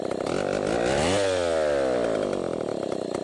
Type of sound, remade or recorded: recorded